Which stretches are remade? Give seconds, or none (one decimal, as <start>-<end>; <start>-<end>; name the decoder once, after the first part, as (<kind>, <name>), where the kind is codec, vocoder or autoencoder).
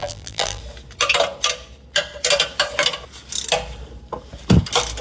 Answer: 0.0-0.6 (vocoder, BigVGAN v2)